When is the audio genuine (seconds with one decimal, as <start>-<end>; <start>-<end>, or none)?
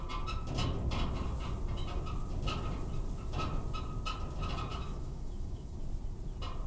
0.0-4.7; 5.8-6.7